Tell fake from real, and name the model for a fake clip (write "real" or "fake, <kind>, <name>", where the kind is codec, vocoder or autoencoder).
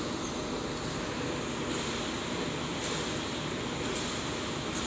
real